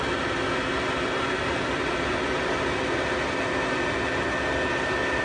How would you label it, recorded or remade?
recorded